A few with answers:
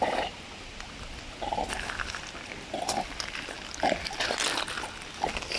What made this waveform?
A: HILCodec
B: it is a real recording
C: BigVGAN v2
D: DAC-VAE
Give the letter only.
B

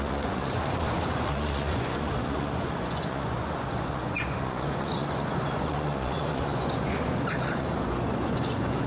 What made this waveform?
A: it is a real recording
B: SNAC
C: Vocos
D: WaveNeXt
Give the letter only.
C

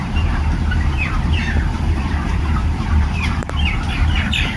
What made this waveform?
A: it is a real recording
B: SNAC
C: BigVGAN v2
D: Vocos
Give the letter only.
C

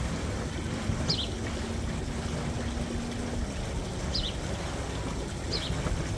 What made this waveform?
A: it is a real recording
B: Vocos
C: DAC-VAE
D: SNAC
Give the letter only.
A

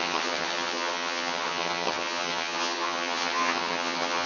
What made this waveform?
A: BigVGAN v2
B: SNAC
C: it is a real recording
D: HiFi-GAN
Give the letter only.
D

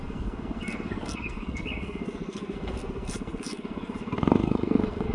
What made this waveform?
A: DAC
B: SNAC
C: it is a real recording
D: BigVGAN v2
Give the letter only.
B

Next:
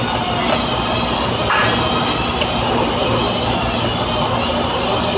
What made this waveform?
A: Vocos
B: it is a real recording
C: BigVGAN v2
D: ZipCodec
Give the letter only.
B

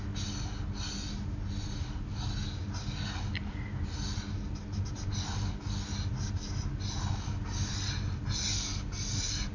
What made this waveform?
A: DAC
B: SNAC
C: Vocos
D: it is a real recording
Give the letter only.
D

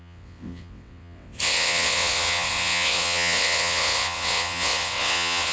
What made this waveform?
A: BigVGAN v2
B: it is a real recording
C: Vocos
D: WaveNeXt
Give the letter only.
D